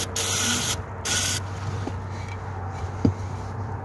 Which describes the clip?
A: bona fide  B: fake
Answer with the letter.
A